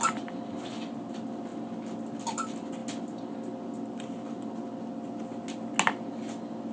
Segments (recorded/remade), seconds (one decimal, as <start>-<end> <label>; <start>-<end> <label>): 0.0-6.7 recorded